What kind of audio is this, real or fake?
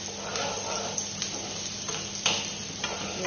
real